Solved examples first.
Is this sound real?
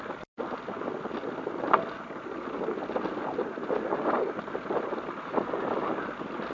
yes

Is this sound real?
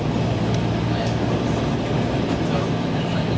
yes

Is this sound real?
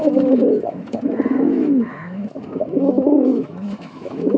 no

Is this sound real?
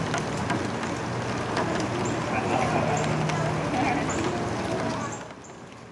yes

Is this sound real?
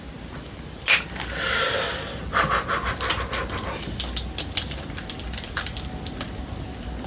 yes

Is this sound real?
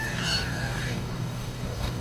no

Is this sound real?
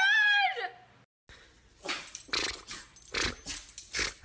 yes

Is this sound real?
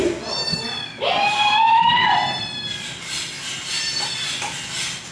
no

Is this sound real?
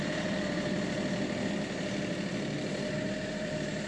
no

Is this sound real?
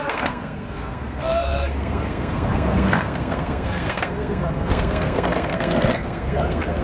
no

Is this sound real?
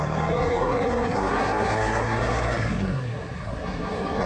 no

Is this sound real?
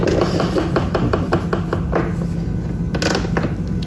yes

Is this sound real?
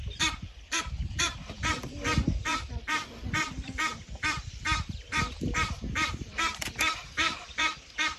no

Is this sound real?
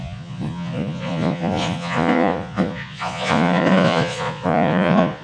no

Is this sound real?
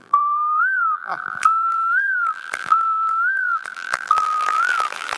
no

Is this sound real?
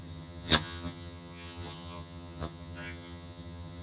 no